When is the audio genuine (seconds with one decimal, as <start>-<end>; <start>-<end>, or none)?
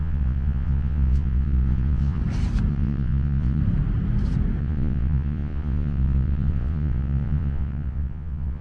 2.2-2.7; 3.6-4.6